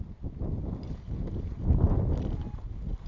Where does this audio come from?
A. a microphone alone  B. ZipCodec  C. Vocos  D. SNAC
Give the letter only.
A